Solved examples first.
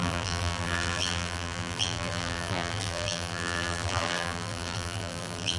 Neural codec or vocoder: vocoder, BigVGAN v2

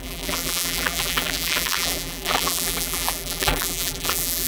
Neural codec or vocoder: vocoder, BigVGAN v2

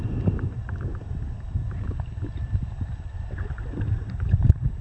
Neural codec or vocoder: none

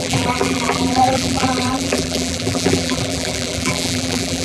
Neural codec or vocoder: vocoder, BigVGAN v2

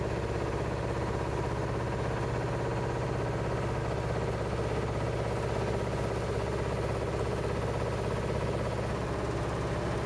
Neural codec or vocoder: none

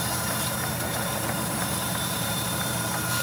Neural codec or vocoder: vocoder, BigVGAN v2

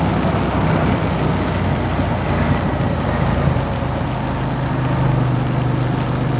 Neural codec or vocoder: none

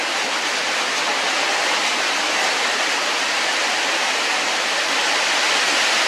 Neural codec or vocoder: none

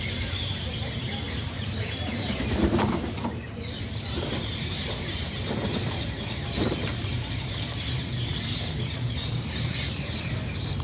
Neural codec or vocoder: vocoder, BigVGAN v2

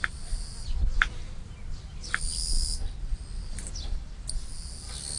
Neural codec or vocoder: none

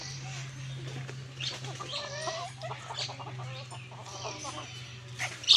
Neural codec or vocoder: none